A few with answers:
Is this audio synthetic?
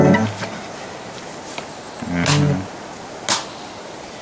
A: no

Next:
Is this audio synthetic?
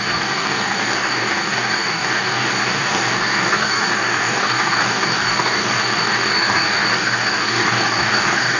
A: yes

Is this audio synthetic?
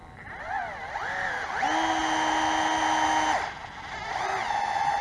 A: no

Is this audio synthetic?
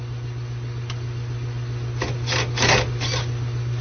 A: no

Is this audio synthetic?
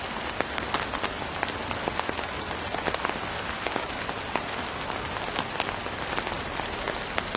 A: no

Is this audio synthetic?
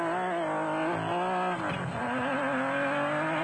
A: no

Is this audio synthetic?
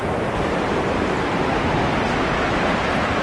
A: yes